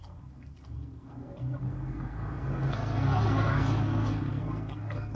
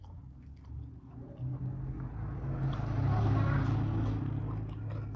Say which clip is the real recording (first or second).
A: second